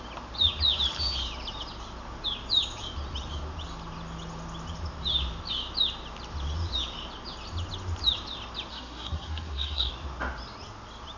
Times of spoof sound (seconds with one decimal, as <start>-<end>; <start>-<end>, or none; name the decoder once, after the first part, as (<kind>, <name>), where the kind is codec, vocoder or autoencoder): 8.7-9.9 (codec, SNAC)